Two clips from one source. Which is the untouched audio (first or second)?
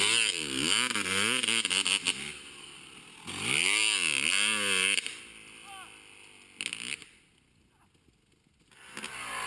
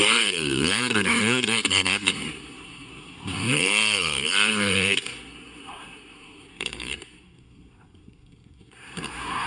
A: first